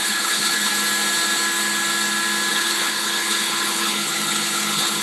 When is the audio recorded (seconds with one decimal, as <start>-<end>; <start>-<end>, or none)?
0.7-2.5